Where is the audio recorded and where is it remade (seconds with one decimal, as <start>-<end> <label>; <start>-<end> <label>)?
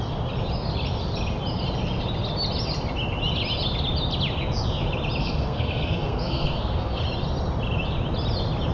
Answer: 0.0-5.2 recorded; 5.2-7.0 remade; 7.0-8.7 recorded